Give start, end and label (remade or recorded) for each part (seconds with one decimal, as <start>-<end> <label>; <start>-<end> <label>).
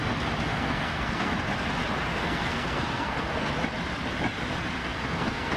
0.0-0.5 recorded; 0.5-1.3 remade; 1.3-2.1 recorded; 2.1-3.5 remade; 3.5-4.8 recorded; 4.8-5.6 remade